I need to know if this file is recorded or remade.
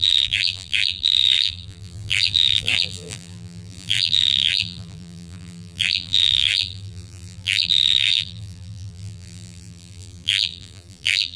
remade